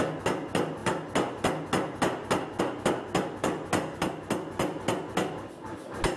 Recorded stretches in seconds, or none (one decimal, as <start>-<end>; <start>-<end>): 0.0-6.2